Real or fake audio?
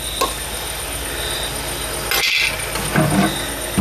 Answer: real